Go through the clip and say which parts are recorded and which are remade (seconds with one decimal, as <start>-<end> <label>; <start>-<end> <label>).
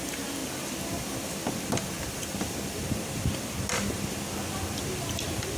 0.0-5.6 remade